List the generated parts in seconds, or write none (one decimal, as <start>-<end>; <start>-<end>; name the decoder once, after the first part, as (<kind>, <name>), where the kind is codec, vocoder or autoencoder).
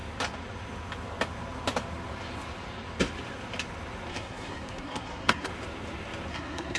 4.1-5.5 (codec, SNAC); 6.3-6.8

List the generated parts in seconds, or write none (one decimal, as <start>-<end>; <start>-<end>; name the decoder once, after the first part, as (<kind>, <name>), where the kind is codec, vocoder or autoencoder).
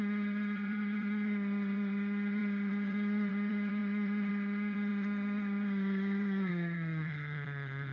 0.0-7.9 (vocoder, HiFi-GAN)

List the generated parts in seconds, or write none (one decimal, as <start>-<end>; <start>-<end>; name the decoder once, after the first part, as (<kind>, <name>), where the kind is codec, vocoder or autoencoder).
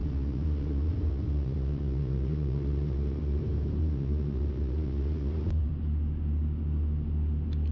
0.0-3.4 (vocoder, Vocos); 3.8-5.7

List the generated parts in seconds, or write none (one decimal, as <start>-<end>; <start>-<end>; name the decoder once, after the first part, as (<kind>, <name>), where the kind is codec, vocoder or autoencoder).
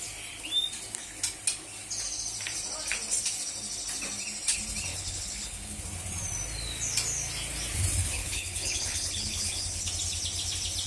4.9-5.8 (codec, HILCodec); 8.0-9.9